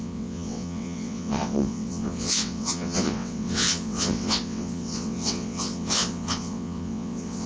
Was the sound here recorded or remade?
remade